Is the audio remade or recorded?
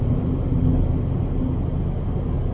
recorded